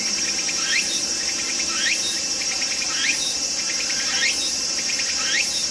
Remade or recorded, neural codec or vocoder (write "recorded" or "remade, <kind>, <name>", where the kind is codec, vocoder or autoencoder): recorded